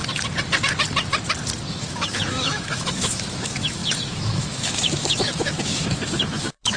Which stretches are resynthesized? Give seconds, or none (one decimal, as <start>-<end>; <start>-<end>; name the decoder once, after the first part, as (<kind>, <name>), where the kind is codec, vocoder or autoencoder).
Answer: 1.7-6.8 (autoencoder, DAC-VAE)